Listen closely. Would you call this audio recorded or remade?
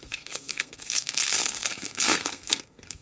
remade